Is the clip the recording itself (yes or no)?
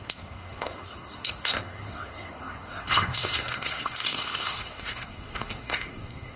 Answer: no